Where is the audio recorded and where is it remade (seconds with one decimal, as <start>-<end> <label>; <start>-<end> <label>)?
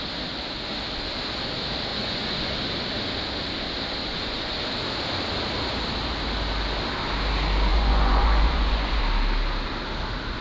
0.0-1.9 recorded; 1.9-2.5 remade; 2.5-4.0 recorded; 4.0-4.6 remade; 4.6-7.7 recorded; 7.7-9.0 remade; 9.0-10.4 recorded